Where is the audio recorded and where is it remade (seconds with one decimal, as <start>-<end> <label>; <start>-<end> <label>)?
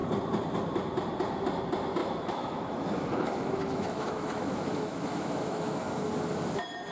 0.0-2.0 recorded; 2.0-6.1 remade; 6.1-6.9 recorded